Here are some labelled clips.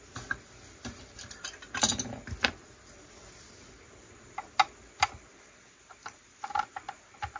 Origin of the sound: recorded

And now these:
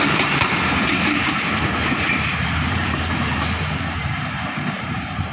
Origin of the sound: remade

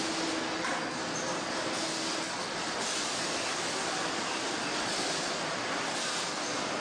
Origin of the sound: recorded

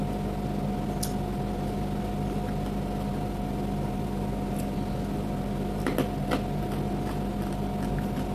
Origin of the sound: recorded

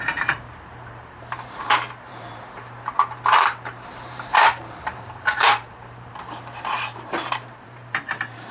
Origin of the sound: remade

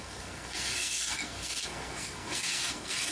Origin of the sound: remade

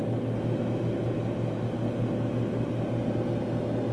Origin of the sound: recorded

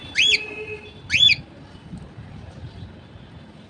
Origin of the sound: remade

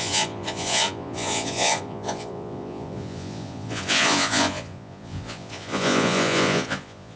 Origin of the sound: remade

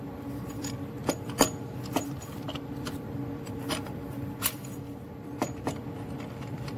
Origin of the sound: remade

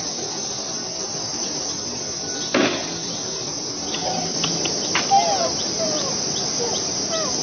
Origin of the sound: recorded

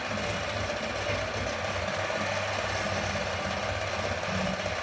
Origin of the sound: recorded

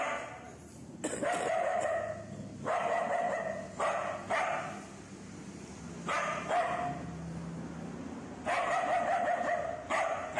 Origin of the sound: recorded